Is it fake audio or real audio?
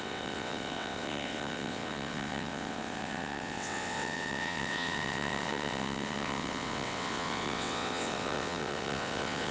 fake